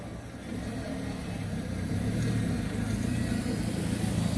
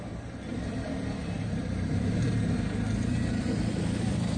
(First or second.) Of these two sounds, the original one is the first